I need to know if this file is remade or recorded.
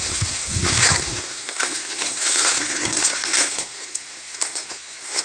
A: remade